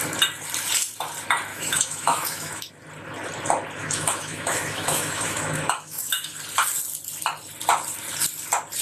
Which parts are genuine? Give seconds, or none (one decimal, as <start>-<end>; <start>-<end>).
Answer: 0.0-1.5; 2.7-3.8; 6.3-8.8